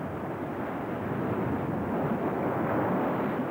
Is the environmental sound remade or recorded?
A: recorded